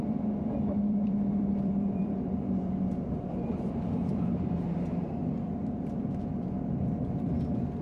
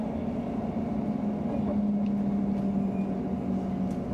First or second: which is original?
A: second